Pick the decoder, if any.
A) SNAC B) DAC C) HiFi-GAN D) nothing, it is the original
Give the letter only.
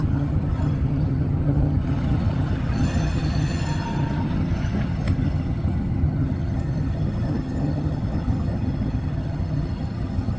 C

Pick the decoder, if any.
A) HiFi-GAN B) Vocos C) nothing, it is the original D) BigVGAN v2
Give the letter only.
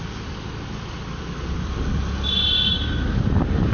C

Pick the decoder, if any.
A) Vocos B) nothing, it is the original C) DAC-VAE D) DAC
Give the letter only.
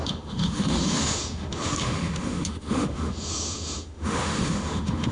C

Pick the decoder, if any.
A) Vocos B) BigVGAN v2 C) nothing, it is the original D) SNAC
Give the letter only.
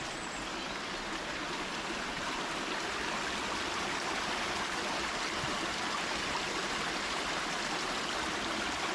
C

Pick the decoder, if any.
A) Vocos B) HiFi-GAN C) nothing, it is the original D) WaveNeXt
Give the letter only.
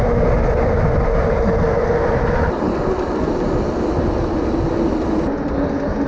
C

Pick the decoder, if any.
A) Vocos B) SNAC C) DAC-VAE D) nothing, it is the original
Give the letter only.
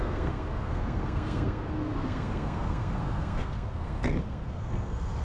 B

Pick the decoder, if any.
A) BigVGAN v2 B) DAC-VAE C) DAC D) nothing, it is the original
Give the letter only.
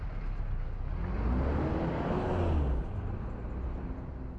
D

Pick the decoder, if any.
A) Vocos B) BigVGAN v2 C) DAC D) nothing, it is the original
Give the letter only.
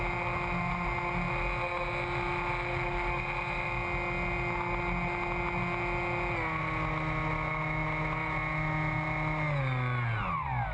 D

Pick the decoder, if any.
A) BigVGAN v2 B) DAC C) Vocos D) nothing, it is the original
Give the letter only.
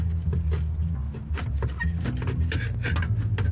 D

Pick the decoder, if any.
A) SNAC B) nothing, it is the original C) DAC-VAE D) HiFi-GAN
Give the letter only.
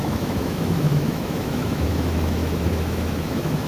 C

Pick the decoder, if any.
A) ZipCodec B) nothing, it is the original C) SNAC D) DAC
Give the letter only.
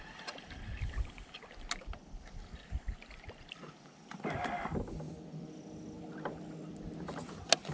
B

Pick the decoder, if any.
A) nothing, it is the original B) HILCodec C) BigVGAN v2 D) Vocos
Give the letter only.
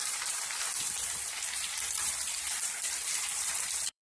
C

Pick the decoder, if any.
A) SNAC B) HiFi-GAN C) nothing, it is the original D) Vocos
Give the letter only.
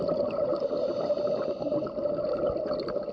C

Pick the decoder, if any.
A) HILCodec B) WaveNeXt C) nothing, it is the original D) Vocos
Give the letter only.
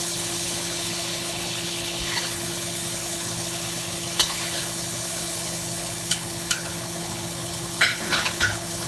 A